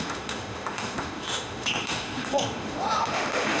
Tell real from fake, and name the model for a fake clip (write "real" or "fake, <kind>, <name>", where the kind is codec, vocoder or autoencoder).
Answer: fake, autoencoder, DAC-VAE